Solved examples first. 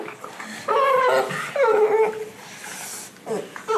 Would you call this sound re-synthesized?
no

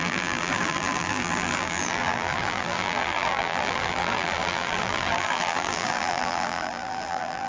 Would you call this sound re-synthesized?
yes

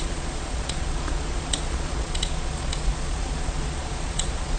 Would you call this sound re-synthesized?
yes